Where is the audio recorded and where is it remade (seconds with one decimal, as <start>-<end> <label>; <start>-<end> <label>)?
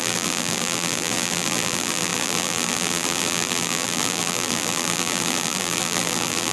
0.0-6.5 remade